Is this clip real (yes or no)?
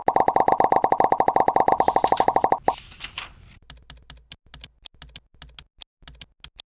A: yes